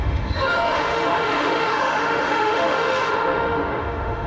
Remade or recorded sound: remade